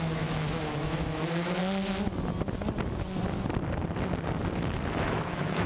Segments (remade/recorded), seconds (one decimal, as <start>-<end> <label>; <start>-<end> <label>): 0.0-1.6 remade; 1.6-5.0 recorded; 5.0-5.7 remade